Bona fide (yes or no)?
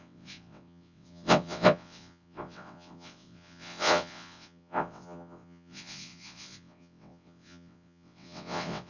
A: no